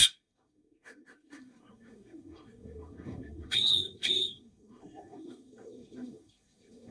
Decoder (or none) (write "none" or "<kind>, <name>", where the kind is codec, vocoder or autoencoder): codec, SNAC